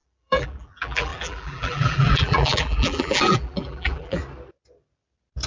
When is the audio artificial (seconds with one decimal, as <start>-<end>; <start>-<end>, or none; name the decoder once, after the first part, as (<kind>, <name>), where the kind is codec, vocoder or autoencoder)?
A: 0.0-4.2 (vocoder, BigVGAN v2)